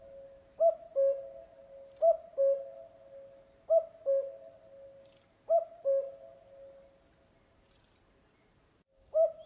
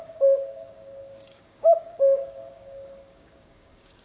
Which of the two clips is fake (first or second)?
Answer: second